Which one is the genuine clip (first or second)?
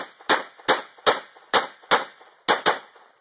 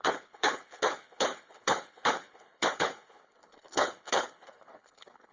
first